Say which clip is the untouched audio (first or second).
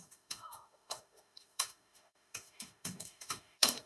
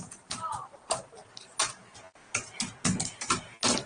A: second